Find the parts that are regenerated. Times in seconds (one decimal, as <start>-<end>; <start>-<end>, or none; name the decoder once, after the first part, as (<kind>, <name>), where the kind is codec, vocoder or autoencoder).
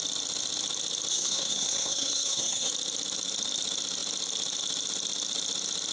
1.1-2.7 (codec, SNAC)